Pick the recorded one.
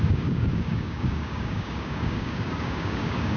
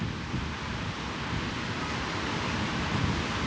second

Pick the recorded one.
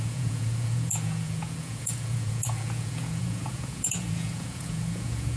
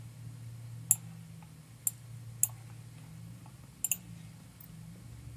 second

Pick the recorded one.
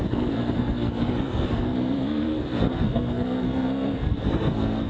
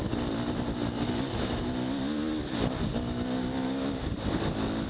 second